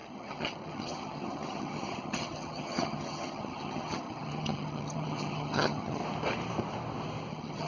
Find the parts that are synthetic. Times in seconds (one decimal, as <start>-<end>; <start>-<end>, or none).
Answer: 0.0-6.0; 7.3-7.7